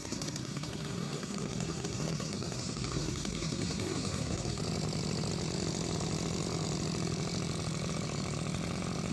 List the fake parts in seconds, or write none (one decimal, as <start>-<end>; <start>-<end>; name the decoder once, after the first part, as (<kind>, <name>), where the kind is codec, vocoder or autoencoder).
0.0-4.6 (codec, SNAC)

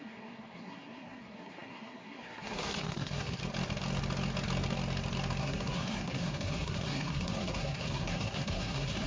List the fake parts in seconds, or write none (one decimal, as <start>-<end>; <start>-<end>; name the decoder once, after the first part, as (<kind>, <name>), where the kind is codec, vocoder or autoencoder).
0.0-3.4 (codec, SNAC); 5.4-9.1

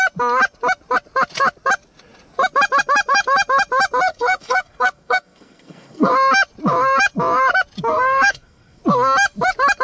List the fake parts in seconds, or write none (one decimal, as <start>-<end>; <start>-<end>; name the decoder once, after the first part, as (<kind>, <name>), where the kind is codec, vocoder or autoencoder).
4.1-6.1 (codec, SNAC); 7.9-8.8

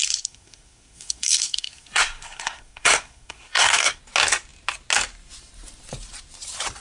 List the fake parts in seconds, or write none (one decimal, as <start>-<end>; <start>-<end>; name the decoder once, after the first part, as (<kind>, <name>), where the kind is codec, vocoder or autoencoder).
0.0-4.0 (codec, SNAC)

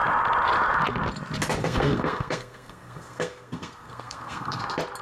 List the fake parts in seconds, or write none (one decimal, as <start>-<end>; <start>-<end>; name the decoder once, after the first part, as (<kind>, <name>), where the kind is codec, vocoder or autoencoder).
1.6-4.6 (codec, SNAC)

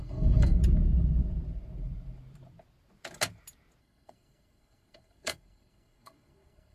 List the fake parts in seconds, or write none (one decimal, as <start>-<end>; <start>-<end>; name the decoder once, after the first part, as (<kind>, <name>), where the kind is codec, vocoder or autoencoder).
0.0-0.6 (codec, SNAC); 3.8-6.7

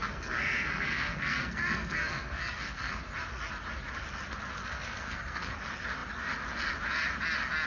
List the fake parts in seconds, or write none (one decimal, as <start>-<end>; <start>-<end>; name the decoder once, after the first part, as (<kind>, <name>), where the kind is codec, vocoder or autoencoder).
0.0-3.0 (codec, SNAC); 4.6-5.5

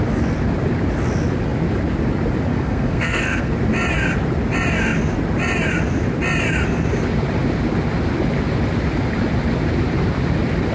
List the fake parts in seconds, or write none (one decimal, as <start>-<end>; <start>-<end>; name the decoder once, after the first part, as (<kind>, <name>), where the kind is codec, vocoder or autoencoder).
2.5-3.5 (codec, SNAC)